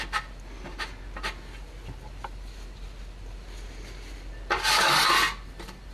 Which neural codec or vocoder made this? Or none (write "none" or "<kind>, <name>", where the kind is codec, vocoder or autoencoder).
none